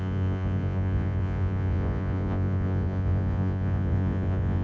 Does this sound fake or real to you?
fake